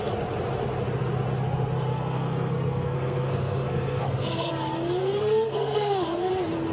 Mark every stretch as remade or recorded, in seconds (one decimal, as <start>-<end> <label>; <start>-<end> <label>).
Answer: 0.0-1.9 recorded; 1.9-4.5 remade; 4.5-5.0 recorded; 5.0-6.3 remade; 6.3-6.7 recorded